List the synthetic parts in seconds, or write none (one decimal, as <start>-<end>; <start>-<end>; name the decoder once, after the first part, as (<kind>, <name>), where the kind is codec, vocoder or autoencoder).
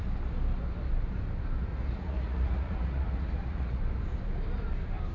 1.7-3.8 (vocoder, Vocos)